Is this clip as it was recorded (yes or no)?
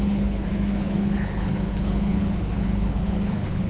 no